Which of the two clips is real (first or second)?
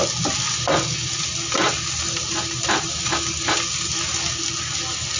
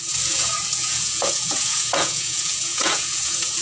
first